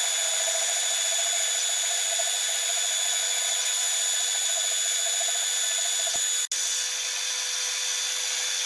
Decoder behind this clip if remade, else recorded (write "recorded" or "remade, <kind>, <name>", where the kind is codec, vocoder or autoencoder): recorded